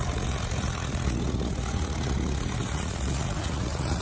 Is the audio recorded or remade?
remade